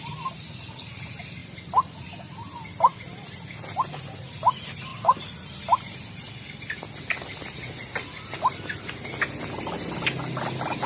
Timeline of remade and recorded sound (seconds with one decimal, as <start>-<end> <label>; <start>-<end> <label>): 0.0-10.9 recorded